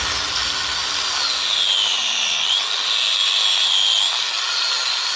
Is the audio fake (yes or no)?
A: no